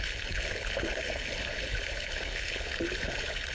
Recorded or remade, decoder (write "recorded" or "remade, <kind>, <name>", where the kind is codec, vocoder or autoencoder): remade, codec, HILCodec